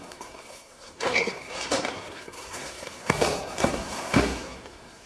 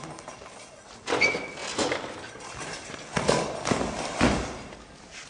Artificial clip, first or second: first